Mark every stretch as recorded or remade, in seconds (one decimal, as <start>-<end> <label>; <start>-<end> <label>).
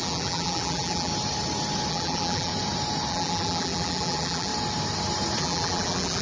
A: 0.0-1.1 remade; 1.1-1.9 recorded; 1.9-2.5 remade; 2.5-3.1 recorded; 3.1-4.5 remade; 4.5-5.4 recorded; 5.4-6.2 remade